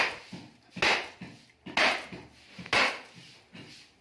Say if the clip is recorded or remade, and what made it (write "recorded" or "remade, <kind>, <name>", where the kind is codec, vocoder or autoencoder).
recorded